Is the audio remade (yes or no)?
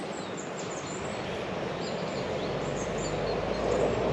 no